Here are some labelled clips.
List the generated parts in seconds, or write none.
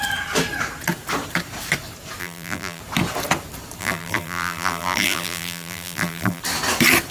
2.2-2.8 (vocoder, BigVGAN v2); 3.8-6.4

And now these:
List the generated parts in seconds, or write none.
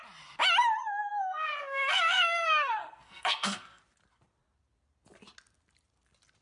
0.8-3.8 (codec, SNAC)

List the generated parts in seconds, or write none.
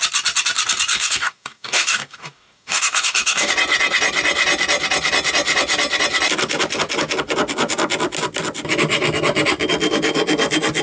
0.9-3.5 (codec, DAC)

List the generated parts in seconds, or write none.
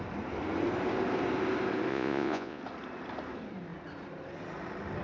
1.9-2.6 (vocoder, Vocos)